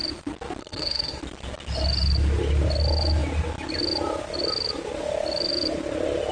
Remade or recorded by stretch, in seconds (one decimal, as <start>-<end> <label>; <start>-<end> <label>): 0.0-0.6 recorded; 0.6-1.2 remade; 1.2-6.3 recorded